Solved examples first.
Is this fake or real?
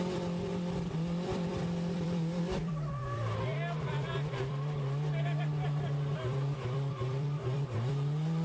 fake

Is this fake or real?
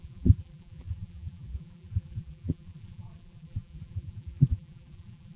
fake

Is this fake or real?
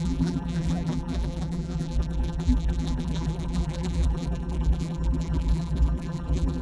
fake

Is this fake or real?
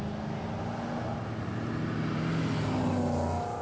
real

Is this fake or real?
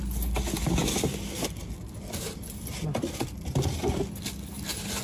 real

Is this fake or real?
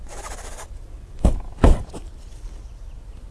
fake